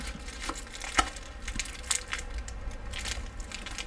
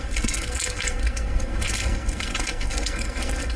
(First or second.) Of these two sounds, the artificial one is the second